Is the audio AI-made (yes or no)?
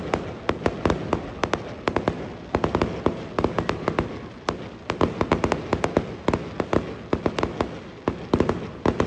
no